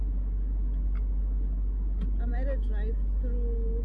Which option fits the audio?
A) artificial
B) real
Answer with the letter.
B